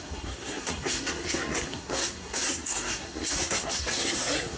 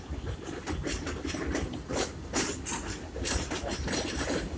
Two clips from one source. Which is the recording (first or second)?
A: second